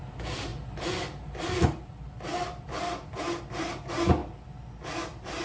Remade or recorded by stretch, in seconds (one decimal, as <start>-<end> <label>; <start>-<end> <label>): 0.0-4.2 remade; 4.2-5.0 recorded; 5.0-5.4 remade